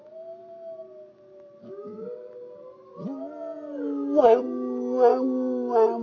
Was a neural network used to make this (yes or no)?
no